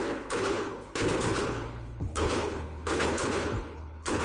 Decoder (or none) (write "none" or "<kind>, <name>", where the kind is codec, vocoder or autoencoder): codec, HILCodec